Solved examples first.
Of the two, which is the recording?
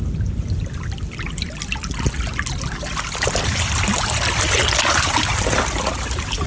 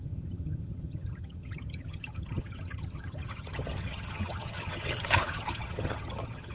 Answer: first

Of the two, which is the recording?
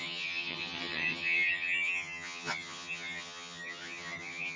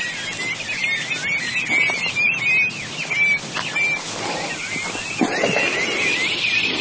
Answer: second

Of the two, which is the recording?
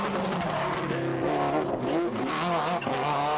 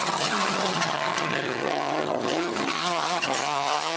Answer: first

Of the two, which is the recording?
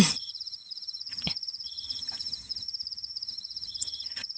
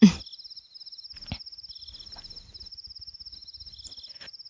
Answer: second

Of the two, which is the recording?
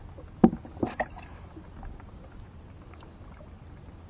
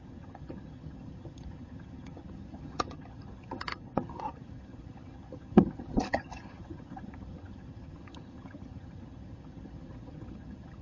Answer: first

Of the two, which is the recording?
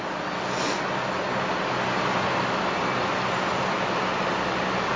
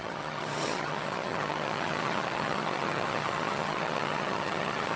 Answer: first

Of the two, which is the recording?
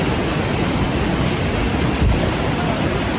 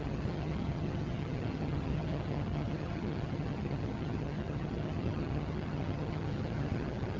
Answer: first